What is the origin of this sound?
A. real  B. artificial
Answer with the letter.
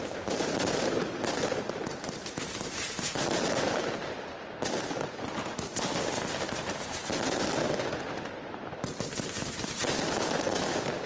A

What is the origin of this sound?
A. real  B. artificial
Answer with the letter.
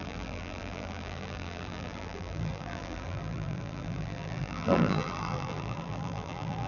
B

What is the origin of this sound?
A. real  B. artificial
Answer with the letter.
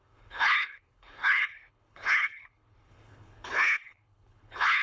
B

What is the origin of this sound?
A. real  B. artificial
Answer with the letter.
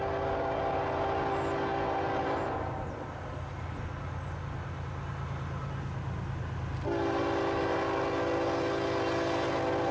A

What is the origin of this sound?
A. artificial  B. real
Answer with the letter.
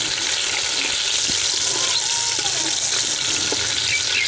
B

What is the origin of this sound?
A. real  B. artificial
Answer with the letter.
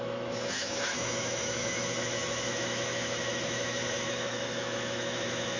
B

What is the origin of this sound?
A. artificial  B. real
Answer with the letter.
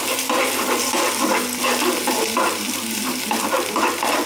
B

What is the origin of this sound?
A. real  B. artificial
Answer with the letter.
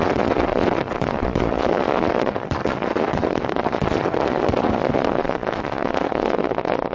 B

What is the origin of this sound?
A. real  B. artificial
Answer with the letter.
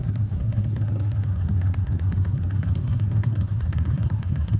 B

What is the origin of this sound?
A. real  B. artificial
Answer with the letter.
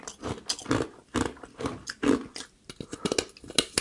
A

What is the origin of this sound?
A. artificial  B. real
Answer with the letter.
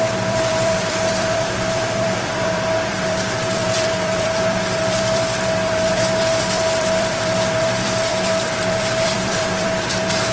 A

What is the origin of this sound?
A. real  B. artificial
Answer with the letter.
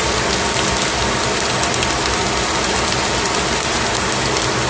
A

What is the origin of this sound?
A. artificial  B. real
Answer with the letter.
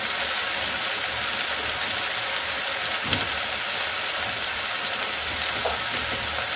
B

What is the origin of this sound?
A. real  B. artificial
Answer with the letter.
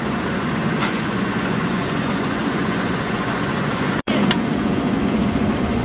B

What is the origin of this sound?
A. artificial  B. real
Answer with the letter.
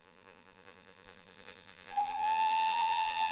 A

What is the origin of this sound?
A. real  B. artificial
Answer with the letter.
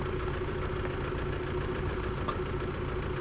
A